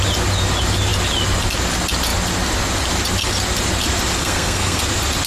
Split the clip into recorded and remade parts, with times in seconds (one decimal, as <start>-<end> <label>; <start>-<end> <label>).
0.0-4.2 recorded; 4.2-4.8 remade; 4.8-5.3 recorded